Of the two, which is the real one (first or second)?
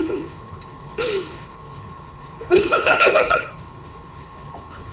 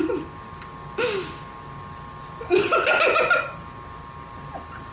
second